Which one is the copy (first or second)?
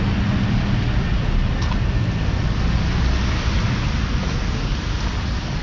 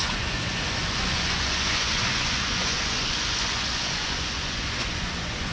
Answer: second